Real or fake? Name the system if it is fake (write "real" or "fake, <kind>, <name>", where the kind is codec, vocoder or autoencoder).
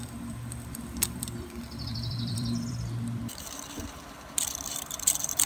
fake, vocoder, BigVGAN v2